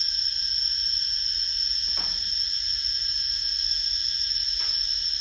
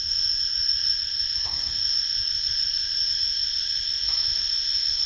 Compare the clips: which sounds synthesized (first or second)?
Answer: second